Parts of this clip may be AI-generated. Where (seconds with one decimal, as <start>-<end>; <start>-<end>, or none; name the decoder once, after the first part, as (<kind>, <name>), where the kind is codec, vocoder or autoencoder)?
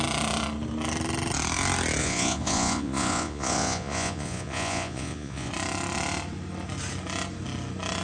2.0-5.5 (vocoder, Vocos)